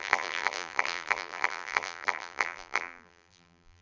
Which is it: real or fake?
fake